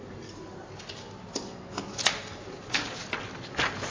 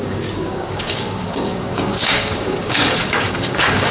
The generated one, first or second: second